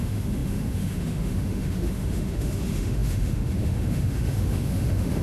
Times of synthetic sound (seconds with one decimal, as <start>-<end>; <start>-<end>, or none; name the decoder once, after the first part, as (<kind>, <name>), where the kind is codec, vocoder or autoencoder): 0.0-5.2 (autoencoder, DAC-VAE)